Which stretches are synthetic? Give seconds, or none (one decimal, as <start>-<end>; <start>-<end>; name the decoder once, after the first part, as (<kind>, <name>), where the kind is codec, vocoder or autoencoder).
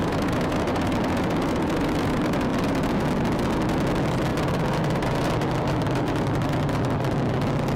2.5-3.1 (vocoder, BigVGAN v2)